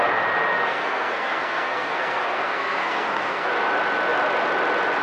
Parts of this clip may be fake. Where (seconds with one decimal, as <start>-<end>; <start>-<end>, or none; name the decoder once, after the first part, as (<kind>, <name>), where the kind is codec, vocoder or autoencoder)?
0.5-3.5 (codec, SNAC)